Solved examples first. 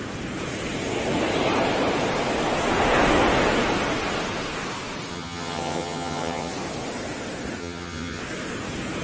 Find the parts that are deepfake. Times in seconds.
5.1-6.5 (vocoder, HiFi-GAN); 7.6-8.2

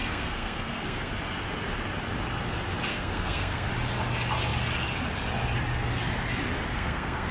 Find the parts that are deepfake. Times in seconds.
0.0-1.1 (codec, SNAC); 2.9-3.7; 6.7-7.3

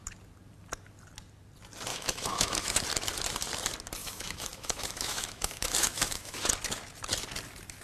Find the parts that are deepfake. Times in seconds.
1.9-2.8 (autoencoder, DAC-VAE); 4.0-6.5